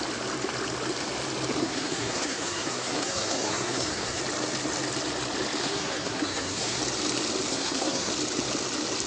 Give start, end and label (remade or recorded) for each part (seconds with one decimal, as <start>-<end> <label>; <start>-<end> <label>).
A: 0.0-1.6 recorded; 1.6-4.2 remade; 4.2-5.6 recorded; 5.6-6.8 remade; 6.8-7.5 recorded; 7.5-8.1 remade; 8.1-9.1 recorded